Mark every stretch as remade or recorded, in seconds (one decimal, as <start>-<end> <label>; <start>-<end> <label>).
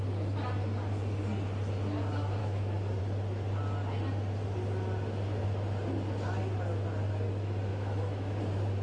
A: 0.0-2.4 recorded; 2.4-3.0 remade; 3.0-7.7 recorded; 7.7-8.4 remade; 8.4-8.8 recorded